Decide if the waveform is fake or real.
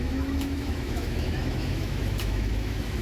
fake